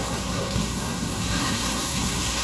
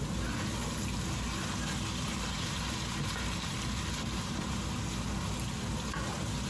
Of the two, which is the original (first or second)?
second